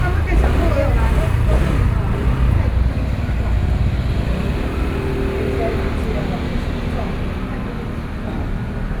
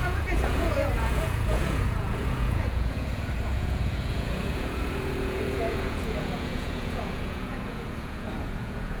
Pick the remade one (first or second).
second